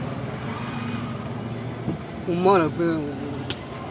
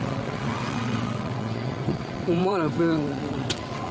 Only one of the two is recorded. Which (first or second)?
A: first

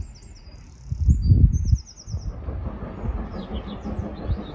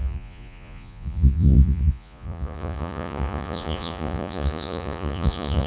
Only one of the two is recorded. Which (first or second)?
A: first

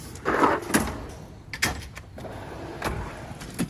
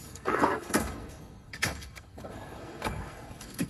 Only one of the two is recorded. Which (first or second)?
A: first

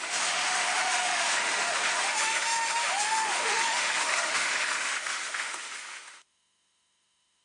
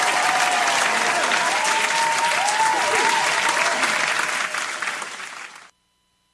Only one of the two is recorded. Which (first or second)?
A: second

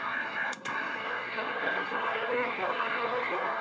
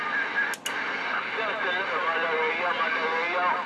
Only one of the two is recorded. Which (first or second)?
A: second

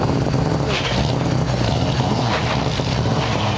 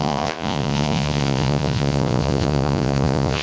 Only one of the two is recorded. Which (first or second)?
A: first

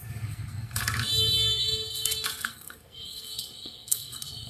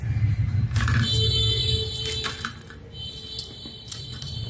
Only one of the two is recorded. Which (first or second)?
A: second